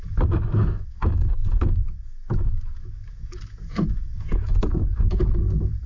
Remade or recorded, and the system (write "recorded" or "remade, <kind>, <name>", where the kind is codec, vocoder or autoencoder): remade, autoencoder, DAC-VAE